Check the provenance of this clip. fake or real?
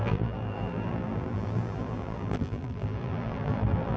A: fake